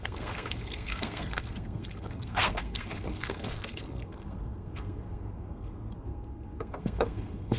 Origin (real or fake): fake